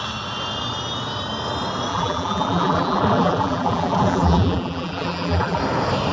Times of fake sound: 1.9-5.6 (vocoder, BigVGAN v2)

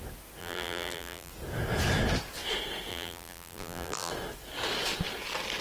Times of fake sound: 0.4-1.3 (vocoder, BigVGAN v2); 2.9-4.1

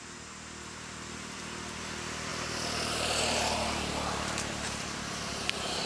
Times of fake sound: 2.3-5.9 (vocoder, BigVGAN v2)